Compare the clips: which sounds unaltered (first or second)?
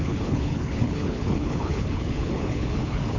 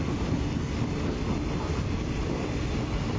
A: second